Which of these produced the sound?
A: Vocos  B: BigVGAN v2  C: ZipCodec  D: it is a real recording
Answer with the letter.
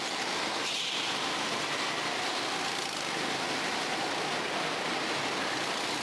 D